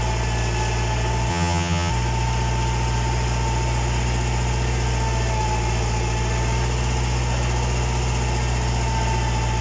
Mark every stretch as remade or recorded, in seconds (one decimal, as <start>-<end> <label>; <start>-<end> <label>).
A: 0.0-1.3 recorded; 1.3-1.9 remade; 1.9-9.6 recorded